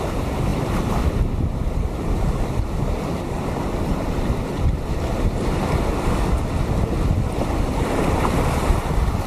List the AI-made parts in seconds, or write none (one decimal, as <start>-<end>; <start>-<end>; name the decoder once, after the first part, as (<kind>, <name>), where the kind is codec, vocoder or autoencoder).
none